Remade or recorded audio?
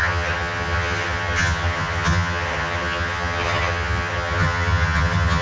remade